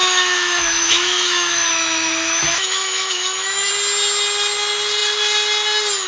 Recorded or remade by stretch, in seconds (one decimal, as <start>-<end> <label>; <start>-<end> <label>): 0.0-3.7 remade; 3.7-6.1 recorded

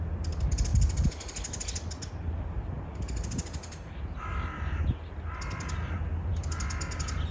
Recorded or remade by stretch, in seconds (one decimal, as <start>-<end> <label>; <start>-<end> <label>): 0.0-7.3 recorded

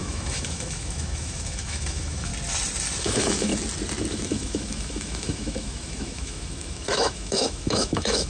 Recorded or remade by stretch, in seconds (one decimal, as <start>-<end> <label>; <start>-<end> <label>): 0.0-2.3 remade; 2.3-3.0 recorded; 3.0-3.5 remade; 3.5-4.1 recorded; 4.1-8.3 remade

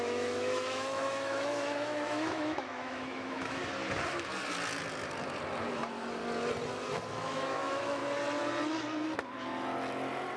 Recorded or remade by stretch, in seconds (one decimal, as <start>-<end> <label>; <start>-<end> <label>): 0.0-3.7 remade; 3.7-7.1 recorded; 7.1-8.0 remade; 8.0-10.4 recorded

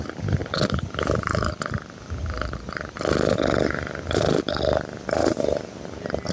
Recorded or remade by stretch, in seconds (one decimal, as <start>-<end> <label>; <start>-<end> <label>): 0.0-6.3 recorded

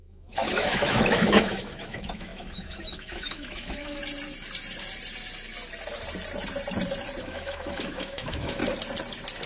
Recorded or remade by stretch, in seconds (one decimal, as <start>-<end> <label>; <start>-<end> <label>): 0.0-4.0 remade; 4.0-7.2 recorded; 7.2-8.6 remade; 8.6-9.5 recorded

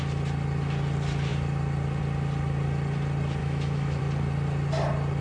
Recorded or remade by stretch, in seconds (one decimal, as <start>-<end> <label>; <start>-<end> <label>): 0.0-3.4 recorded; 3.4-4.0 remade; 4.0-5.2 recorded

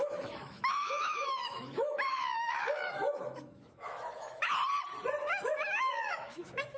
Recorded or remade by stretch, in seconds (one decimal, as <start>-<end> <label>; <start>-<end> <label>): 0.0-4.6 remade; 4.6-5.2 recorded; 5.2-6.8 remade